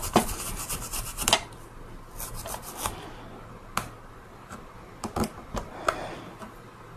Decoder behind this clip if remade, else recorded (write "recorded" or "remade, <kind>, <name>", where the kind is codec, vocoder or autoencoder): recorded